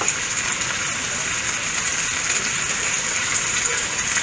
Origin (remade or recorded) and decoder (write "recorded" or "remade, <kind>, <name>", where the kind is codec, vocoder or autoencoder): remade, vocoder, BigVGAN v2